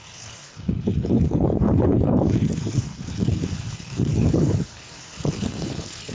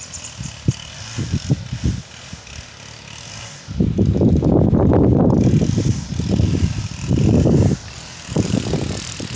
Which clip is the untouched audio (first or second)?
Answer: second